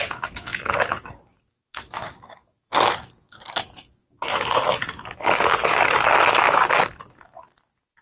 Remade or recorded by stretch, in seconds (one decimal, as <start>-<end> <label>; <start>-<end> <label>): 0.0-8.0 remade